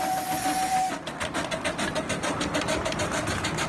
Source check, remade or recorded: recorded